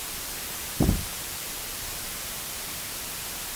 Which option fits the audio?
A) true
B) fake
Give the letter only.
B